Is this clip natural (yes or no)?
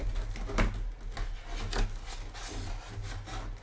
yes